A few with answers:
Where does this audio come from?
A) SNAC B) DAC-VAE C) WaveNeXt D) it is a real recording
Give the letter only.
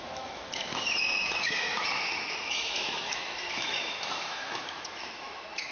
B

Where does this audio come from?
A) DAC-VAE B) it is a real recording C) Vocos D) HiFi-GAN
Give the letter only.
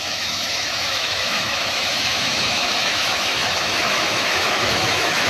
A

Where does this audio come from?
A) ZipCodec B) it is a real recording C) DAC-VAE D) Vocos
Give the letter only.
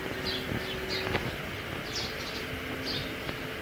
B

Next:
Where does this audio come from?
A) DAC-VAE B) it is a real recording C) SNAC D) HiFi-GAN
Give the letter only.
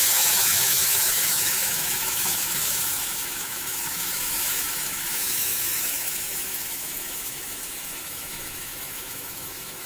A